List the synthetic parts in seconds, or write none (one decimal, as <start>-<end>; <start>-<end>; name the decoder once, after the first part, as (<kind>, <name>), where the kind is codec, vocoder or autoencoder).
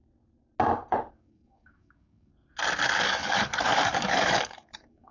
1.1-2.3 (codec, DAC); 3.0-5.1